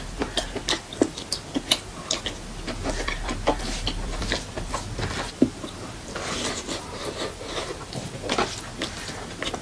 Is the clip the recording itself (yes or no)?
yes